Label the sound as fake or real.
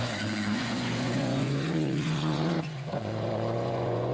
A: fake